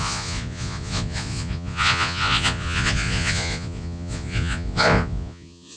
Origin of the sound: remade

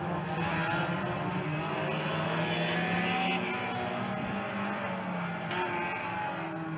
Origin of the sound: recorded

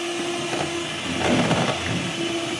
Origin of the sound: recorded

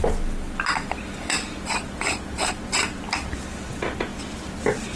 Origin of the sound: recorded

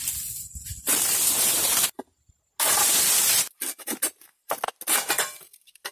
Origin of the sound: recorded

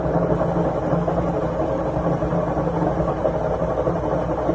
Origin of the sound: recorded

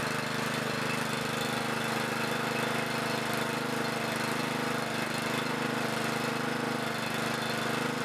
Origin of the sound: recorded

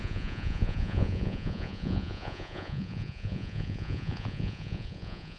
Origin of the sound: remade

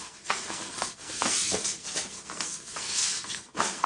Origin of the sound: remade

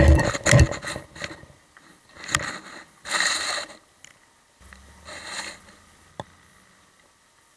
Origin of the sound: recorded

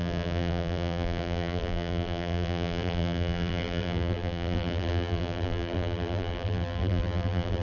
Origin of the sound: remade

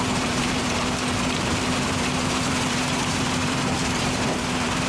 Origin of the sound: remade